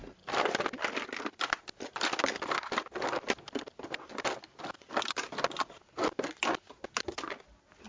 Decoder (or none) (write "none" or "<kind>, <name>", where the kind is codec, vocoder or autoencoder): none